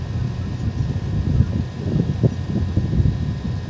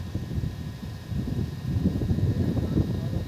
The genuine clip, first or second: first